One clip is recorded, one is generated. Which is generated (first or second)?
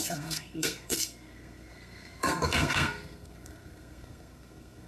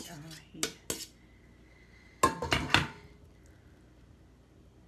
first